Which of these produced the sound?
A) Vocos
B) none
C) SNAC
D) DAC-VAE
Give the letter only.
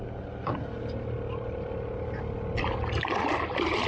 B